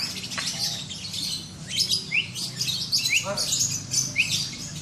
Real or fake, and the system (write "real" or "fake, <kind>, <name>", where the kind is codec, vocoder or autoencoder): real